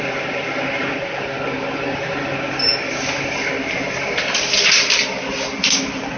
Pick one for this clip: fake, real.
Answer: real